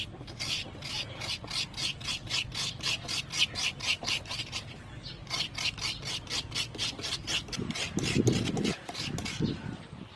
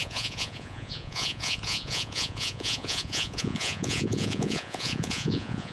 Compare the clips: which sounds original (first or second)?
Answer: first